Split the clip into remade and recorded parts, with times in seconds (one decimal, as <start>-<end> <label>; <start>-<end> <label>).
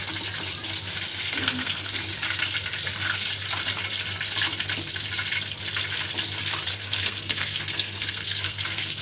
0.0-1.1 recorded; 1.1-2.0 remade; 2.0-6.7 recorded; 6.7-9.0 remade